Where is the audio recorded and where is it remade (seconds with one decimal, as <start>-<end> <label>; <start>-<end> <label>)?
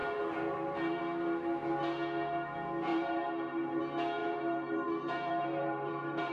0.0-1.0 remade; 1.0-2.9 recorded; 2.9-3.8 remade; 3.8-4.2 recorded; 4.2-6.3 remade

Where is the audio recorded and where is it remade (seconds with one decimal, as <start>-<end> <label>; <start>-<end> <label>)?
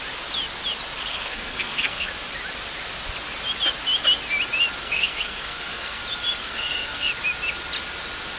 0.0-1.1 recorded; 1.1-2.1 remade; 2.1-4.8 recorded; 4.8-6.0 remade; 6.0-6.4 recorded; 6.4-7.1 remade; 7.1-8.4 recorded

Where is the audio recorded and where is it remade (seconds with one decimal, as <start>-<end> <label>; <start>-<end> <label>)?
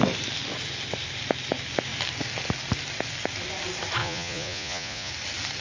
0.0-4.0 recorded; 4.0-5.1 remade; 5.1-5.6 recorded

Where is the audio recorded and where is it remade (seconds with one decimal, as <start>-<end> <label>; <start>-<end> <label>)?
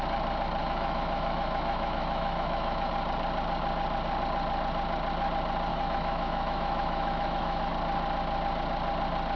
0.0-0.6 recorded; 0.6-2.9 remade; 2.9-5.7 recorded; 5.7-7.7 remade; 7.7-9.4 recorded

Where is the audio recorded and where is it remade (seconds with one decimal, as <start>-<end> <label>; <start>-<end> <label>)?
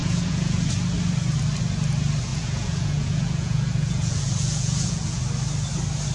0.0-0.7 remade; 0.7-2.3 recorded; 2.3-5.2 remade; 5.2-6.1 recorded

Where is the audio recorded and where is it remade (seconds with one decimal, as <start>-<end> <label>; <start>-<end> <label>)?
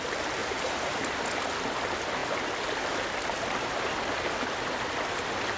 0.0-0.4 recorded; 0.4-1.1 remade; 1.1-5.6 recorded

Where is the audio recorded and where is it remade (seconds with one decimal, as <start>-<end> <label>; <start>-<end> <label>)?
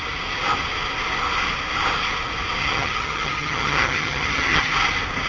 0.0-2.6 recorded; 2.6-4.7 remade; 4.7-5.3 recorded